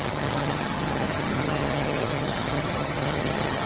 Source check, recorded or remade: remade